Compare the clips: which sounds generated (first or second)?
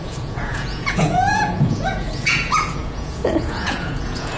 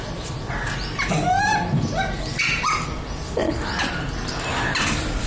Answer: first